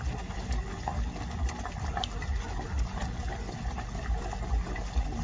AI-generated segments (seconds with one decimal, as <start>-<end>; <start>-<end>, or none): none